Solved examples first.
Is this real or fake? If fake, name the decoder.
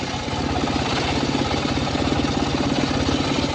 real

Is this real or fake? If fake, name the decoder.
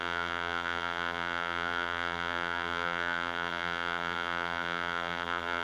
fake, vocoder, BigVGAN v2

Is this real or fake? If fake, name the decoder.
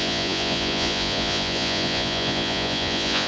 fake, vocoder, Vocos